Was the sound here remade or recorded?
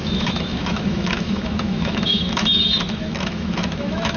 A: remade